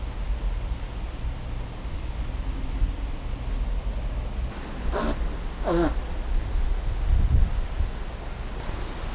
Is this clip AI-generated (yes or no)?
no